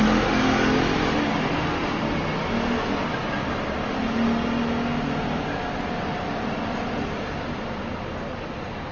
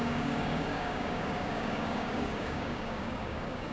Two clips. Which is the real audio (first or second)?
first